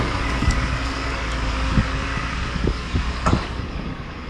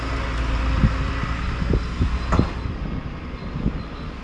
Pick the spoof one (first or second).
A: first